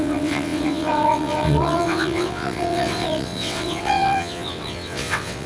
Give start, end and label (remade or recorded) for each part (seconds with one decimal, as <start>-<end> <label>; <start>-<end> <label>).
0.0-5.5 remade